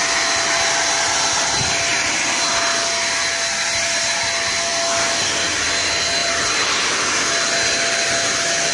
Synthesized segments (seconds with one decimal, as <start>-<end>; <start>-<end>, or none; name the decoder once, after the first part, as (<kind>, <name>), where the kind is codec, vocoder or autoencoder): 1.9-2.5 (vocoder, BigVGAN v2); 6.2-6.9